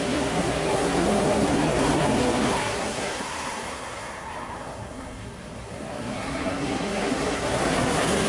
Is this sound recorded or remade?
remade